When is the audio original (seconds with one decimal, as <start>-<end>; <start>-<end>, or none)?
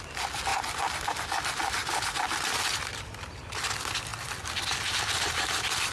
0.0-5.9